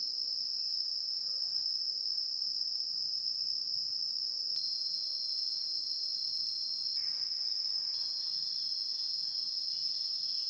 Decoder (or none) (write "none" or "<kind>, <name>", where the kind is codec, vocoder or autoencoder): none